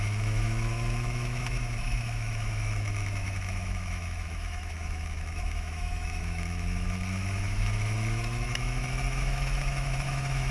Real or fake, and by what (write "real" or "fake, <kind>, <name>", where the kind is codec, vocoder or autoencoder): fake, autoencoder, DAC-VAE